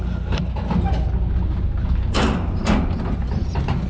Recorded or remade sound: recorded